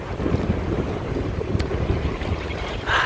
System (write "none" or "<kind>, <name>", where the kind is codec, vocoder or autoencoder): vocoder, BigVGAN v2